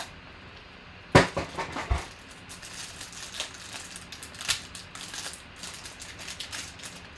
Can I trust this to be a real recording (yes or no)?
yes